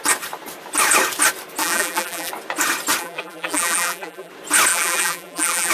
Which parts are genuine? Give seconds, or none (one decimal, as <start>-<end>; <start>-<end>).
0.0-1.6; 2.3-3.0; 4.3-4.7